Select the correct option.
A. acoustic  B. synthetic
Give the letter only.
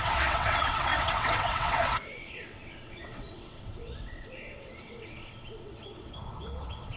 B